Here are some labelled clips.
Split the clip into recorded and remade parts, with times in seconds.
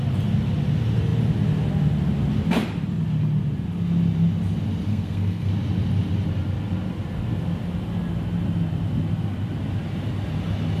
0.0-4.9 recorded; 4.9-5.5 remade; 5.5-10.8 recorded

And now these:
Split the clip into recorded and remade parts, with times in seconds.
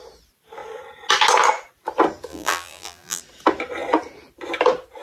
0.0-2.3 recorded; 2.3-3.2 remade; 3.2-5.0 recorded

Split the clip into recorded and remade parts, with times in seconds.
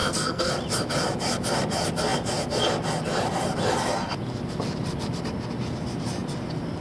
0.0-0.5 remade; 0.5-6.8 recorded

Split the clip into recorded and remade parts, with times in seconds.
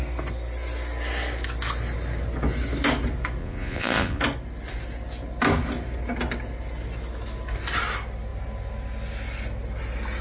0.0-3.4 recorded; 3.4-4.2 remade; 4.2-10.2 recorded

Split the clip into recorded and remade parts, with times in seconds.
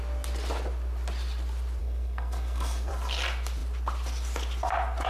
0.0-1.8 recorded; 1.8-2.9 remade; 2.9-5.1 recorded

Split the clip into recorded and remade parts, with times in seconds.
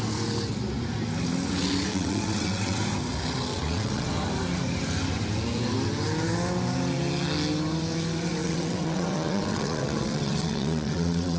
0.0-1.9 recorded; 1.9-2.8 remade; 2.8-3.5 recorded; 3.5-4.1 remade; 4.1-8.4 recorded; 8.4-11.4 remade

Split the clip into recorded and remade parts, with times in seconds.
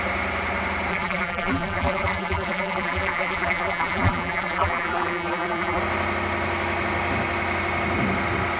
0.0-0.9 recorded; 0.9-5.8 remade; 5.8-8.6 recorded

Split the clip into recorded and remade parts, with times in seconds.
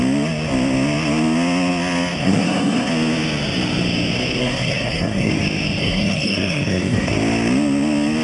0.0-2.2 recorded; 2.2-2.9 remade; 2.9-4.4 recorded; 4.4-5.3 remade; 5.3-5.8 recorded; 5.8-7.1 remade; 7.1-8.2 recorded